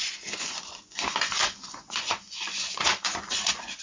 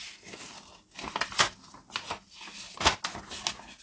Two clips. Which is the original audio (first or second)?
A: second